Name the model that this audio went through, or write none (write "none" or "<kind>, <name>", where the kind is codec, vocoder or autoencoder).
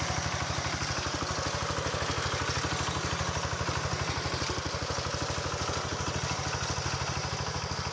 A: none